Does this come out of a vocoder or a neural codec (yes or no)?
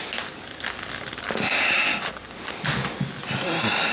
no